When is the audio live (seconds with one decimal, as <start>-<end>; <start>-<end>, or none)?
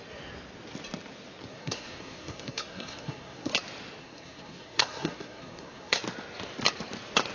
0.0-1.5; 3.5-4.0; 6.0-7.3